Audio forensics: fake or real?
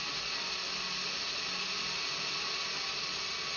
real